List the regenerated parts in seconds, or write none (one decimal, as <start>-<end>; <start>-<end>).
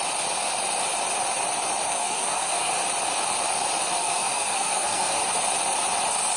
1.9-2.7; 4.0-5.2